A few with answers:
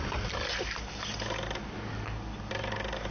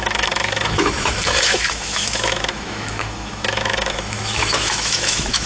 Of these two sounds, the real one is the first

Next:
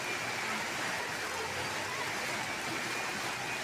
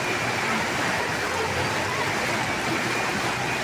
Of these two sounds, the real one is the first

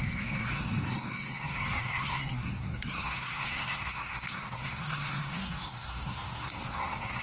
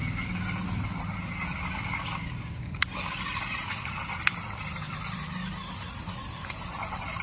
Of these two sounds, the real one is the second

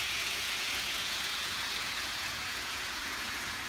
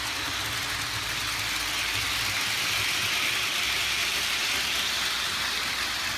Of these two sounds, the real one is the second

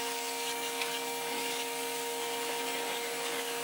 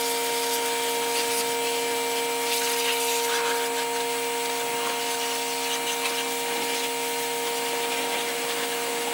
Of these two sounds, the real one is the second